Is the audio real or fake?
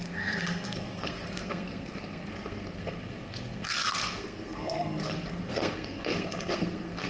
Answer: fake